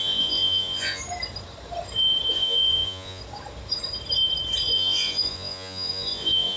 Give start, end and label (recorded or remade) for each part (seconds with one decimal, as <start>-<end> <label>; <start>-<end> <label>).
0.0-1.0 remade; 1.0-2.3 recorded; 2.3-3.2 remade; 3.2-4.7 recorded; 4.7-6.6 remade